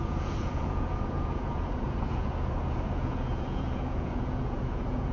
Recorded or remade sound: remade